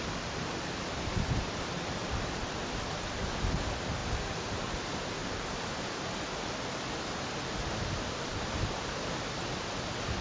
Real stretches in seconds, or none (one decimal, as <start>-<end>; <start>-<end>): 0.0-2.0; 3.0-4.0; 4.8-5.2; 5.9-10.2